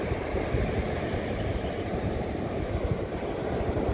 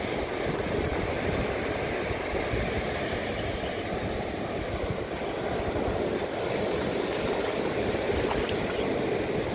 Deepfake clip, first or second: first